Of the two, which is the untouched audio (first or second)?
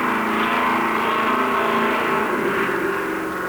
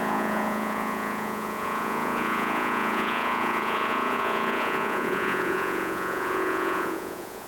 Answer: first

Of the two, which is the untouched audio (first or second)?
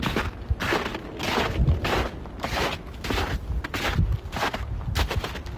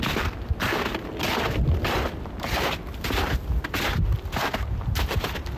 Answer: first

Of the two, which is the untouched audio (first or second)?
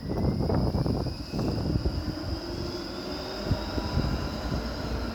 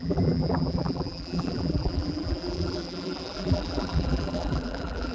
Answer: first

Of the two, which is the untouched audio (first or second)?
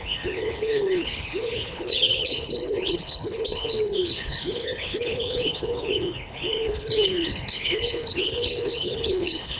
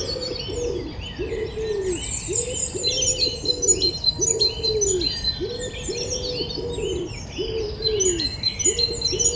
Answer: second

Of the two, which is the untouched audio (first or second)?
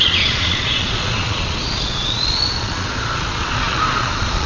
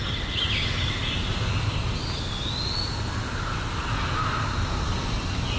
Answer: second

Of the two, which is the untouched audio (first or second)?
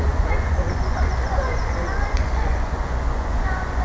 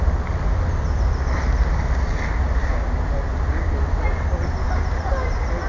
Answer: second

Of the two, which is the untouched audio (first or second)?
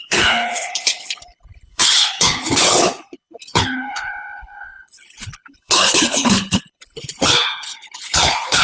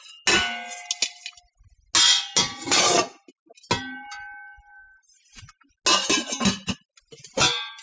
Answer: second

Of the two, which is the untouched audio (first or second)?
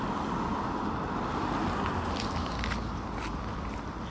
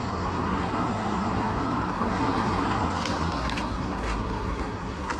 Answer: first